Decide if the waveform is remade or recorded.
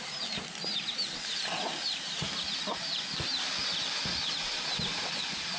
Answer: recorded